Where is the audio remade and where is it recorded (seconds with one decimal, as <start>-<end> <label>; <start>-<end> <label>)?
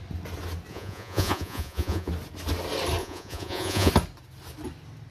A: 0.0-0.7 recorded; 0.7-2.1 remade; 2.1-3.0 recorded; 3.0-3.9 remade; 3.9-5.1 recorded